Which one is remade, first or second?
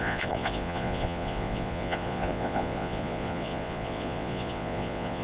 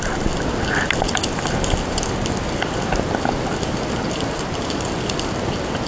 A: first